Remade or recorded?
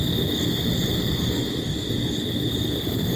recorded